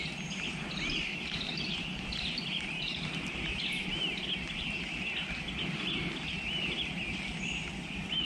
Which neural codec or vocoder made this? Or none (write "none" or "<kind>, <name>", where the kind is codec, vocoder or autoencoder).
none